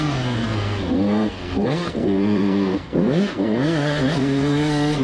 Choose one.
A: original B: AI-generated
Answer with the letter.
B